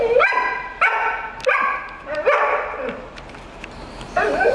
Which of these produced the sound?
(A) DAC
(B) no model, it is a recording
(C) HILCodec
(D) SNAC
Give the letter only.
B